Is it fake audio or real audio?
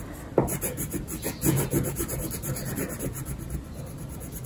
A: real